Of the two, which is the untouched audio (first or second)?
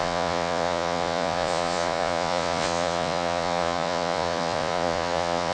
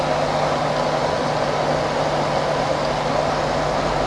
second